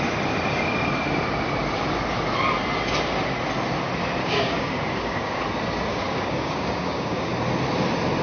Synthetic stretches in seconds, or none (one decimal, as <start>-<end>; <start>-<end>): 4.2-5.4; 5.9-7.3